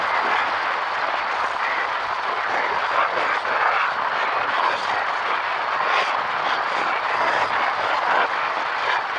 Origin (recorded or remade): recorded